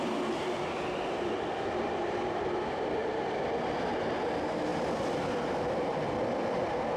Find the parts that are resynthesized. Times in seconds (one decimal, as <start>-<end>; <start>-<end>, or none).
none

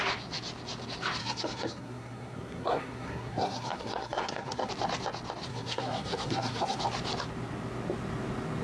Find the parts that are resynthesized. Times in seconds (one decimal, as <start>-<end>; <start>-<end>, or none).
1.2-4.7; 5.5-6.8

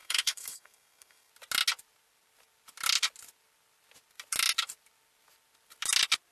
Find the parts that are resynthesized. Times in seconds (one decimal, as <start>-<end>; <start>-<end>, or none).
0.0-1.3

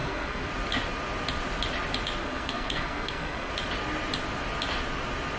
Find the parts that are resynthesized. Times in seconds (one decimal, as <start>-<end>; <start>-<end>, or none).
0.0-0.5; 2.2-3.5

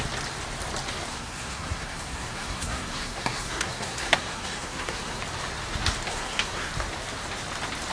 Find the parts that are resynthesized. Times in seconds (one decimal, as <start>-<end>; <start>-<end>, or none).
1.1-5.2; 6.1-6.7

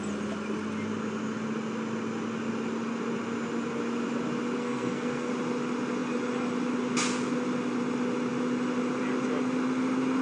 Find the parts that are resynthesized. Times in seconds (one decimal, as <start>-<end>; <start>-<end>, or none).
4.6-5.3

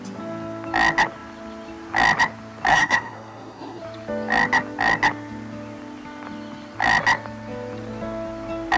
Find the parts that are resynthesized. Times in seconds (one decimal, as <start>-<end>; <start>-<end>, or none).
2.7-3.8